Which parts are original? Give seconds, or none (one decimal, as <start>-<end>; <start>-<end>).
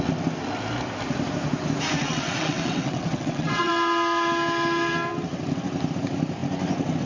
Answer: 0.0-2.0; 3.7-7.1